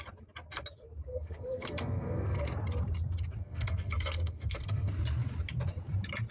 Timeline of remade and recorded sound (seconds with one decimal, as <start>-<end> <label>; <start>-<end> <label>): 0.0-1.1 recorded; 1.1-2.4 remade; 2.4-3.4 recorded; 3.4-4.9 remade; 4.9-6.3 recorded

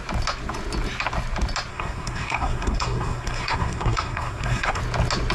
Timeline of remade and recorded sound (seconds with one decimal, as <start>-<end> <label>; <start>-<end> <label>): 0.0-1.7 recorded; 1.7-4.8 remade; 4.8-5.3 recorded

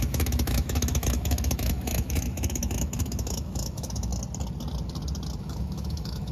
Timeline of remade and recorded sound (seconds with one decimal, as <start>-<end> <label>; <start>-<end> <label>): 0.0-4.1 remade; 4.1-5.4 recorded; 5.4-6.3 remade

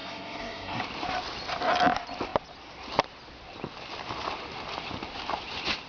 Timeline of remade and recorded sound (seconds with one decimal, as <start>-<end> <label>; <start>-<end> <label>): 0.0-0.8 remade; 0.8-5.9 recorded